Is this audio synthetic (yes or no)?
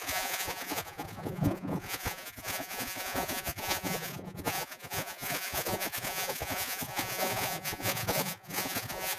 yes